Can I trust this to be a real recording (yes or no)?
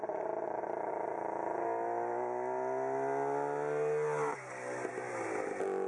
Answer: yes